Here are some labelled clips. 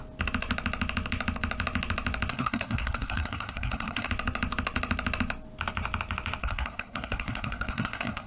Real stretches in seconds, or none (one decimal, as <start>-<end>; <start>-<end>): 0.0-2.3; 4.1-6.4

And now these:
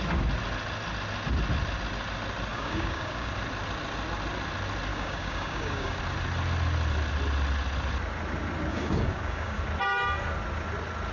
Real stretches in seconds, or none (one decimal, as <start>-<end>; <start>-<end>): 0.0-2.5; 3.3-4.9; 6.0-8.7; 9.6-11.1

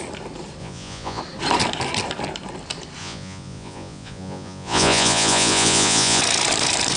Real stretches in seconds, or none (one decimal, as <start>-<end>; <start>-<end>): 0.0-0.6; 1.2-3.0; 6.2-7.0

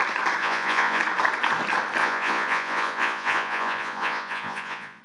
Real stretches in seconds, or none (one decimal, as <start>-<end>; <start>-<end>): 0.0-0.4; 1.0-2.0

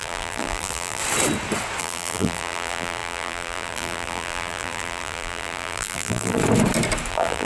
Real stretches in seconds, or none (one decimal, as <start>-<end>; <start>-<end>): 1.0-1.8; 6.4-7.1

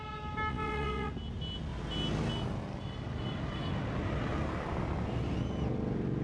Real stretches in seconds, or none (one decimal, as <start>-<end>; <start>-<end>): 0.0-0.5; 1.1-6.2